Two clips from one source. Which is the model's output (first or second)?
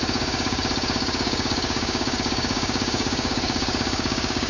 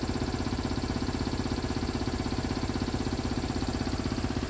first